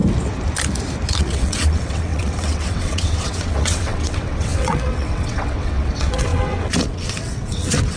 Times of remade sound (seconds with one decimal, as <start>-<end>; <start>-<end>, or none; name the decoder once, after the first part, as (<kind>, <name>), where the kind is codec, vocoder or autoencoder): 1.2-8.0 (vocoder, WaveNeXt)